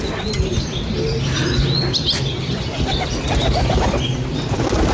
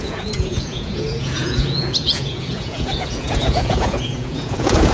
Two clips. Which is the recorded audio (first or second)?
first